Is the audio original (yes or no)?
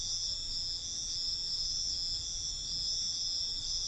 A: yes